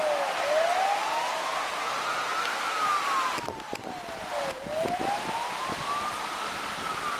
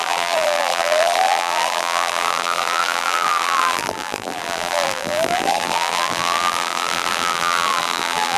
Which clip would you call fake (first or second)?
second